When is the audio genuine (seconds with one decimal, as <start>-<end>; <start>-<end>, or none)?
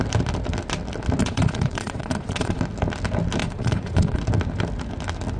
0.0-1.2; 2.6-3.4; 4.2-5.4